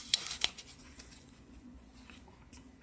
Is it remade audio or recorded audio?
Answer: remade